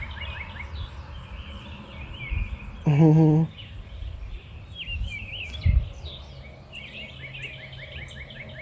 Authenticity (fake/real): real